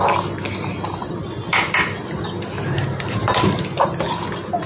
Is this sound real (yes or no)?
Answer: yes